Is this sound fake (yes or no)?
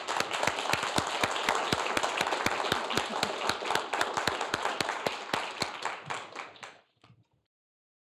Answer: no